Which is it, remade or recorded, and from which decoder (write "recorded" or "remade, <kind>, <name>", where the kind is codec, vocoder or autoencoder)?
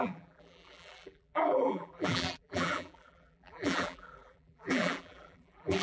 remade, vocoder, BigVGAN v2